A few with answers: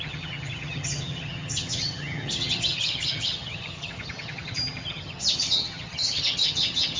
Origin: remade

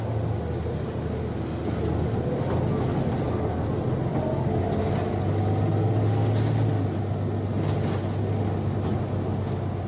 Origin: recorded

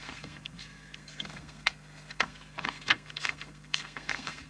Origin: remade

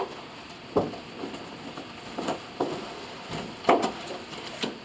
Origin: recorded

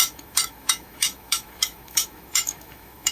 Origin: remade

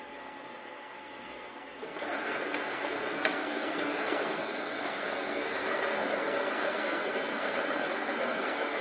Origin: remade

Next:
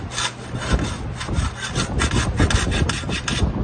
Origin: recorded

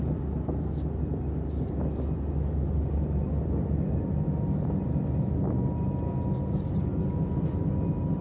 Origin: recorded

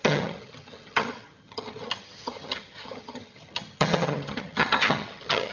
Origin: remade